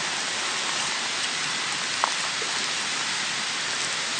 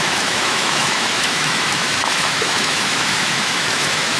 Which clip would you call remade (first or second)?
second